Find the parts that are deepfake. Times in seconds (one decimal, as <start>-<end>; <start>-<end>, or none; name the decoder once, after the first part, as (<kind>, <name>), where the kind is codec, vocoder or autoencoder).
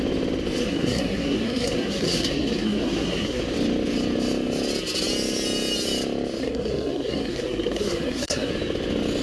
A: 0.6-3.4 (codec, SNAC); 6.4-8.5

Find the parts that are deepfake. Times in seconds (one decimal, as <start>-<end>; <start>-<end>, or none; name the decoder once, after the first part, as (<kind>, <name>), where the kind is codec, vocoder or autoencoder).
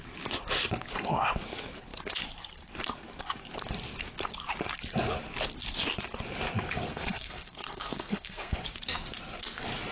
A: 6.8-8.6 (codec, SNAC)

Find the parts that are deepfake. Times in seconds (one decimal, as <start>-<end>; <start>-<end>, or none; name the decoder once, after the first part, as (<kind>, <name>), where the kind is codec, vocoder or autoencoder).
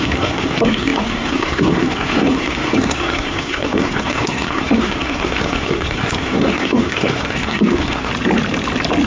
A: 0.0-8.1 (codec, SNAC)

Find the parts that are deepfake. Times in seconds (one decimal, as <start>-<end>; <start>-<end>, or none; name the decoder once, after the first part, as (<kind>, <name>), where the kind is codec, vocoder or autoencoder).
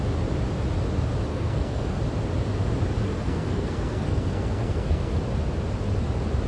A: 1.3-2.0 (codec, SNAC); 3.1-5.2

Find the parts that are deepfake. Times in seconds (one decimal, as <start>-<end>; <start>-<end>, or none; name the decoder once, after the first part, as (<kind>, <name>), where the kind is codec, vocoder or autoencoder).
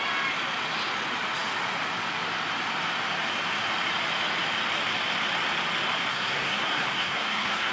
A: 6.1-7.7 (codec, SNAC)